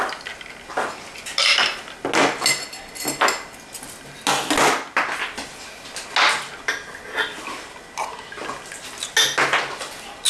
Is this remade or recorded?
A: recorded